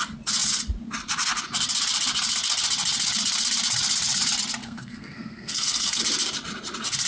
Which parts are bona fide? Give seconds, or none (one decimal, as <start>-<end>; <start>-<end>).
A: 0.0-4.6; 6.0-7.1